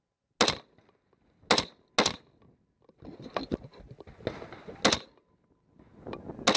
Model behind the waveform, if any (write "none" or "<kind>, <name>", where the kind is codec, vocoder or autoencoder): none